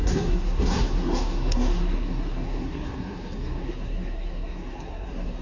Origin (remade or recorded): remade